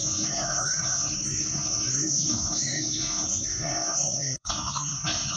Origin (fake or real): fake